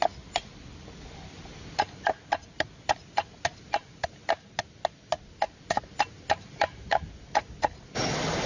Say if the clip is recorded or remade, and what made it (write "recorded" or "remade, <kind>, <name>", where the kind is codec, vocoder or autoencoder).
recorded